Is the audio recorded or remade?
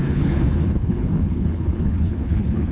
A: remade